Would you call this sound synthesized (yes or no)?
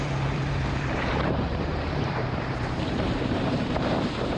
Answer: yes